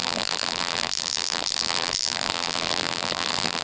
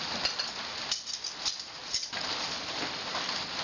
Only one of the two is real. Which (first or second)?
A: second